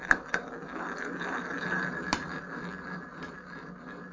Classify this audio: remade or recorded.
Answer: recorded